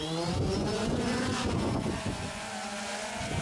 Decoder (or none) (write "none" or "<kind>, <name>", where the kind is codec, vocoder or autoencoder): vocoder, Vocos